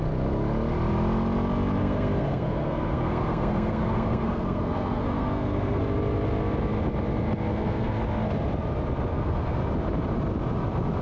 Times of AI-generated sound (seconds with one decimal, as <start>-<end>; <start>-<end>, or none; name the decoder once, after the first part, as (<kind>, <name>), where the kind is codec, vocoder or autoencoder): 1.8-5.8 (codec, SNAC); 7.5-8.0; 9.1-9.6